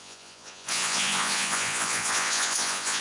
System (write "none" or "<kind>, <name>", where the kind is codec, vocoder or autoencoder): vocoder, Vocos